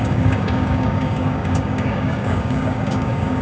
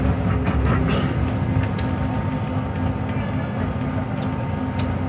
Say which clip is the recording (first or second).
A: second